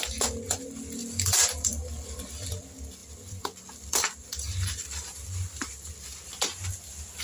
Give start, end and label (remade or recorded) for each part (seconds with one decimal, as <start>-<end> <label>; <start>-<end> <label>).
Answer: 0.0-1.0 recorded; 1.0-2.5 remade; 2.5-3.0 recorded; 3.0-5.9 remade; 5.9-7.2 recorded